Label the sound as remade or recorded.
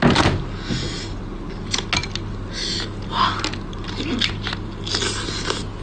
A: recorded